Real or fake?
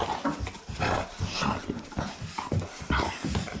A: real